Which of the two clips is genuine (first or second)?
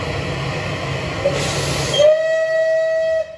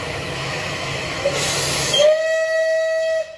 first